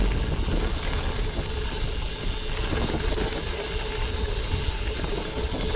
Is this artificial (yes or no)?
no